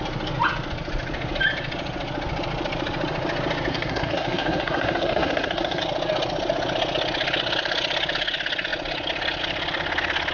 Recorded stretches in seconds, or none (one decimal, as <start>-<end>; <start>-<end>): 0.0-3.7; 5.8-10.3